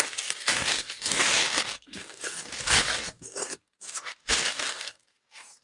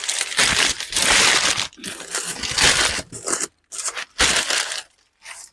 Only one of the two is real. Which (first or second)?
second